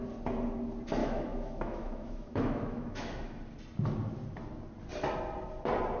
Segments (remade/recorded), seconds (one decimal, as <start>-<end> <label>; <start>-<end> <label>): 0.0-1.0 recorded; 1.0-3.4 remade; 3.4-6.0 recorded